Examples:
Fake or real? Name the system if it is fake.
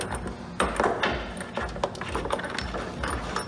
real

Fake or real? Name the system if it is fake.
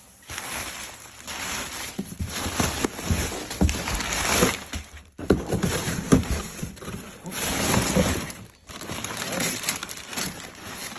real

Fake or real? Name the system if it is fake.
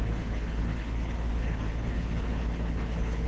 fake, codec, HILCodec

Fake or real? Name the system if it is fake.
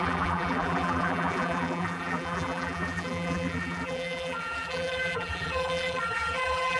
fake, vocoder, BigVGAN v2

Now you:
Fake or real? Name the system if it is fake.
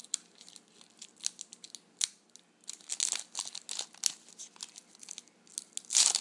real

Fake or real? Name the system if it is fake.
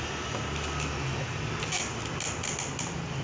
real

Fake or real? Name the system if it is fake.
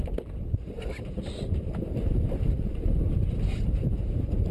fake, vocoder, BigVGAN v2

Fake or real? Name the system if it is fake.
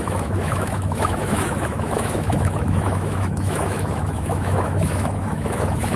fake, autoencoder, DAC-VAE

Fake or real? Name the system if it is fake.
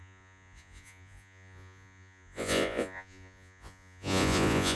fake, vocoder, Vocos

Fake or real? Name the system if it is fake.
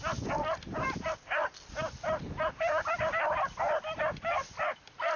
real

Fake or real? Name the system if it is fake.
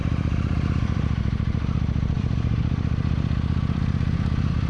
fake, vocoder, BigVGAN v2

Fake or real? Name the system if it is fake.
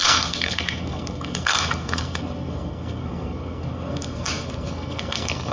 fake, codec, SNAC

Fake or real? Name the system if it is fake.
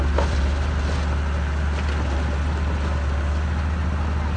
real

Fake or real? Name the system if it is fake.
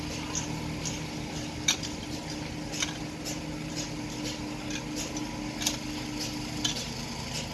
real